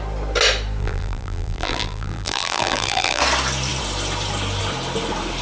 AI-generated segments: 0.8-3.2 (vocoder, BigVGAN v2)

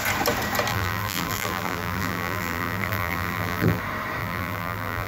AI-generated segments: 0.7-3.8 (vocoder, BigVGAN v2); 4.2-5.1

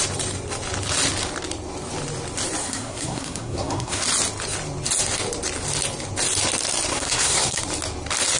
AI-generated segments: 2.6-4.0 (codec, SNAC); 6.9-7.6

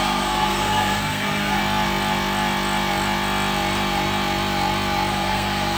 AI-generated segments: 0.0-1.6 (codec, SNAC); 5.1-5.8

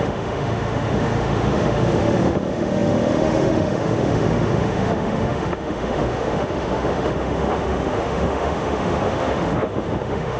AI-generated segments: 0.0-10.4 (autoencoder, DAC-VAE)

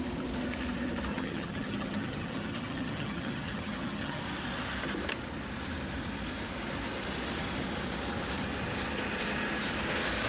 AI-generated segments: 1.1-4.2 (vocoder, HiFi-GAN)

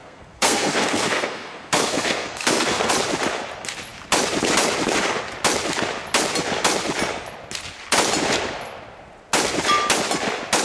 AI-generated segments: 0.0-2.9 (codec, SNAC)

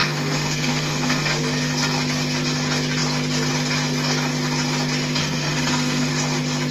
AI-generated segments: 0.0-1.4 (codec, SNAC); 5.2-6.1